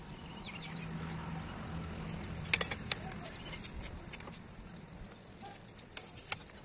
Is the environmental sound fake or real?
real